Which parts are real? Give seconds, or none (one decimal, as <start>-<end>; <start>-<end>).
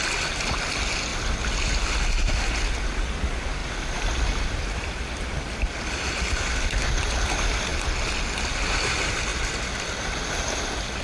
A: 0.0-3.6; 6.1-11.0